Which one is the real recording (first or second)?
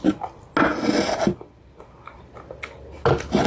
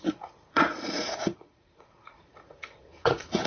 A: first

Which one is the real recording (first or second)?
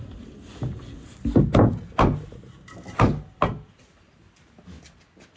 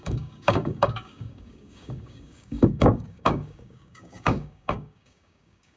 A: first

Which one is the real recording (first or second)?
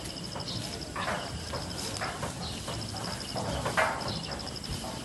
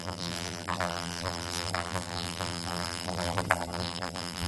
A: first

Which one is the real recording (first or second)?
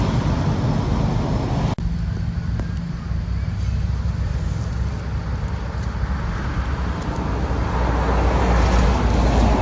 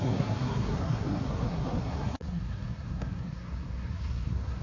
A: first